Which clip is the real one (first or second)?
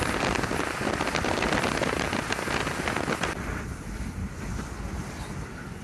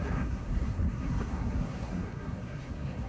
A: first